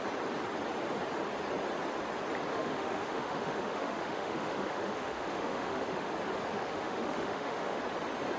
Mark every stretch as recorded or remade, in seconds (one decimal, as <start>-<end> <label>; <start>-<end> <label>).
0.0-2.5 recorded; 2.5-6.1 remade; 6.1-6.5 recorded; 6.5-7.8 remade; 7.8-8.4 recorded